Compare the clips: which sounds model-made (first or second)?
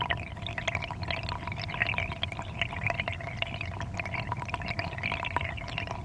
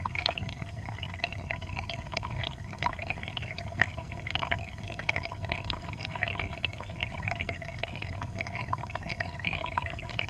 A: second